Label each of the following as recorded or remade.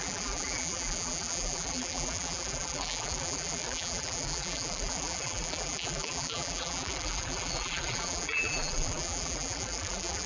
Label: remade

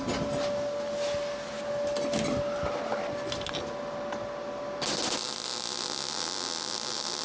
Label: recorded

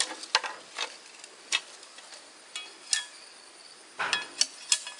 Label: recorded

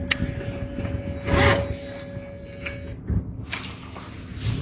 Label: recorded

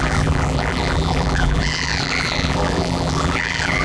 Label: remade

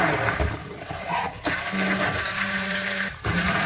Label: remade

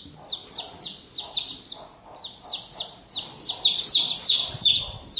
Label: recorded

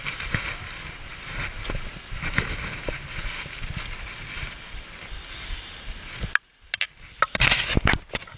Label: recorded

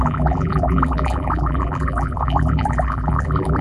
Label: remade